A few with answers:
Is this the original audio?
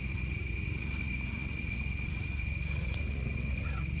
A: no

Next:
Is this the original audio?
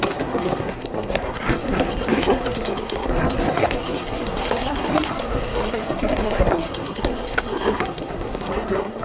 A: no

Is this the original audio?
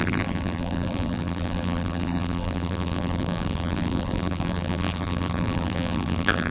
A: no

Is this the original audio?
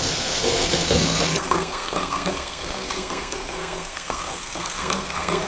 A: no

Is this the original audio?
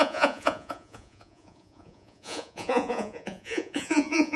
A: no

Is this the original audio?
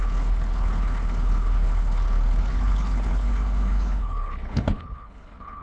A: no